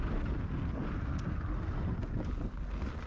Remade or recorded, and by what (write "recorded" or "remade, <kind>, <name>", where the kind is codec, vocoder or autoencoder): recorded